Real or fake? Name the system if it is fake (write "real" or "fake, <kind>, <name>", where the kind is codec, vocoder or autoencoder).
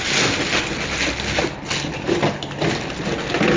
real